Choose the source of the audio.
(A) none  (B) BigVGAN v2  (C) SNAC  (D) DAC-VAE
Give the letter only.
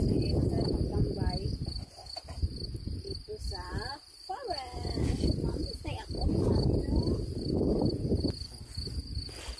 A